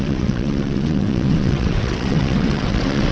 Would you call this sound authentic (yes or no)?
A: no